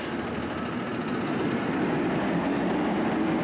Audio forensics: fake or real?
real